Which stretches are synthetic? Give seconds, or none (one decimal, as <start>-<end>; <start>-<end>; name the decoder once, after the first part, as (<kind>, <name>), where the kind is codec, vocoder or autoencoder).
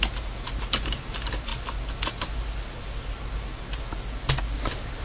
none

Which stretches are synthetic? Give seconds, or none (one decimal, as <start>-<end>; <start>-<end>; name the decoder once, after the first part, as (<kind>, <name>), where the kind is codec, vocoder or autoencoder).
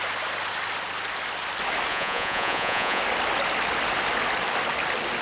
1.9-3.0 (vocoder, Vocos)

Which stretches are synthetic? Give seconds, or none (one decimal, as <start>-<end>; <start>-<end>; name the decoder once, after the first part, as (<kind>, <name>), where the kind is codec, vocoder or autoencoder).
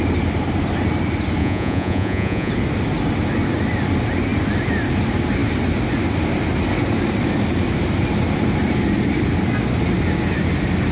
1.4-2.5 (vocoder, Vocos)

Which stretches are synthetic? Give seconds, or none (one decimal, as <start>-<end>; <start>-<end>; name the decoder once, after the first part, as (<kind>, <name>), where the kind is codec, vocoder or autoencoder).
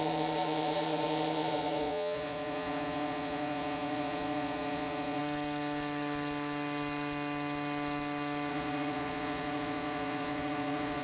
0.0-5.2 (vocoder, Vocos); 8.5-11.0